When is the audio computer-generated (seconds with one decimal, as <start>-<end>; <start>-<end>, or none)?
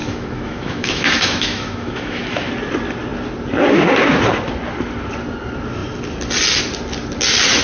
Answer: 0.0-2.5